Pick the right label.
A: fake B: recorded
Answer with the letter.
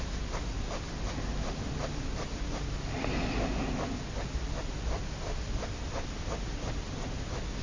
B